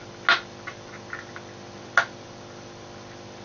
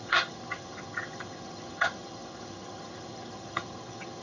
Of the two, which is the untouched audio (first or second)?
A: first